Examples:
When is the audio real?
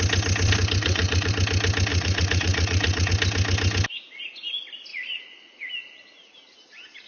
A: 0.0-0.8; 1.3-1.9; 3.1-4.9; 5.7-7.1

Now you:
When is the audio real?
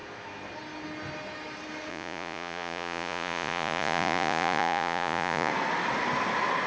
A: 0.0-1.9; 5.5-6.7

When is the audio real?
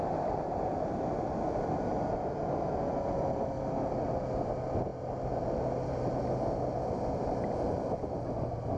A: 0.0-8.8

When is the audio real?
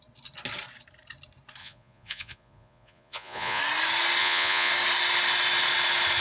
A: 0.0-1.6; 3.6-4.2; 4.7-6.2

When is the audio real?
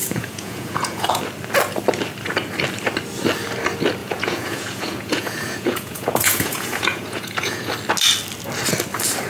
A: 1.2-4.0; 7.7-9.3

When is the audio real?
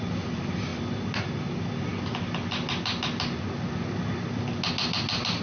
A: 0.0-5.4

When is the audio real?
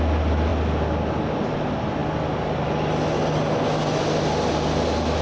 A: 0.0-5.2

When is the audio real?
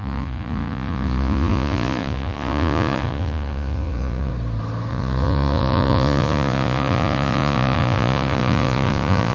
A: 4.3-4.9